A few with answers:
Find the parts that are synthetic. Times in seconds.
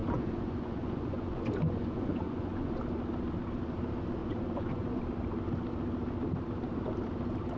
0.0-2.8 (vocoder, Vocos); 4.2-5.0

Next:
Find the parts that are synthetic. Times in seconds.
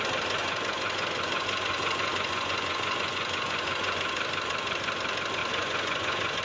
0.4-4.1 (vocoder, Vocos); 5.4-6.4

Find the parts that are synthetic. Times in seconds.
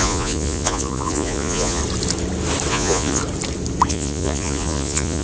0.0-1.8 (vocoder, Vocos); 2.7-3.2; 3.9-5.2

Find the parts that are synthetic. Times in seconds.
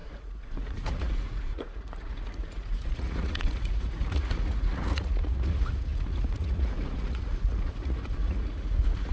0.0-9.1 (vocoder, Vocos)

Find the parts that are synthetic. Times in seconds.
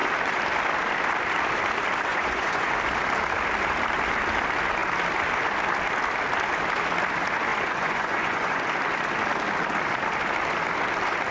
2.1-2.7 (vocoder, Vocos); 7.5-8.7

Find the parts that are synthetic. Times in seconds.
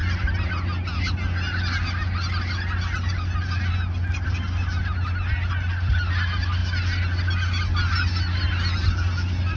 none